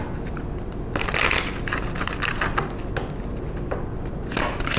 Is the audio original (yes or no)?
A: yes